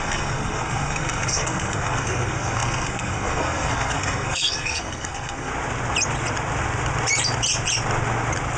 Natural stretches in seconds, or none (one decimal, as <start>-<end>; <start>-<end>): 5.5-8.6